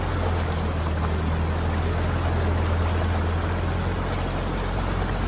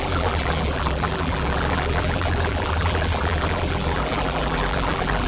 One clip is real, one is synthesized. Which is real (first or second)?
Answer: first